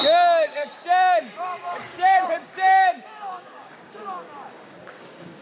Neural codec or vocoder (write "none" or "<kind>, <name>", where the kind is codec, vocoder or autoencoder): codec, DAC